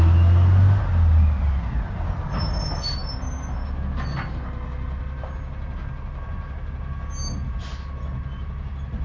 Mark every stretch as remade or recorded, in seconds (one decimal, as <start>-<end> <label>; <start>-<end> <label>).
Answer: 0.0-9.0 recorded